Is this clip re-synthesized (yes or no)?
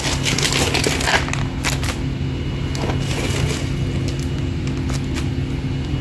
no